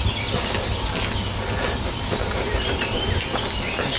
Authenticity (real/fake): real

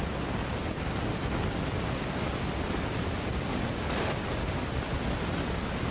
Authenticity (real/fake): real